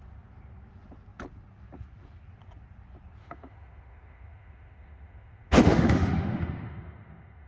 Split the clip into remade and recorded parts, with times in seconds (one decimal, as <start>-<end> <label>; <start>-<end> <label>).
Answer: 0.0-3.2 recorded; 3.2-7.5 remade